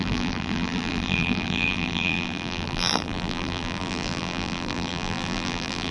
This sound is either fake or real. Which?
fake